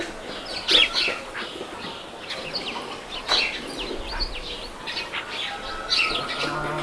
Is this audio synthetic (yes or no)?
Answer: no